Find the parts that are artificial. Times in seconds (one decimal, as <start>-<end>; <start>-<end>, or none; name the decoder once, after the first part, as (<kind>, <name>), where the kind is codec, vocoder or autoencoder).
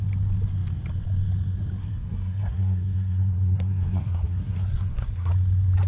1.8-5.3 (codec, SNAC)